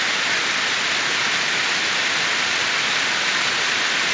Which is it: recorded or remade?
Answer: recorded